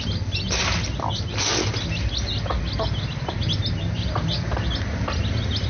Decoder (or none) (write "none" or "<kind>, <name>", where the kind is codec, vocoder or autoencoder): none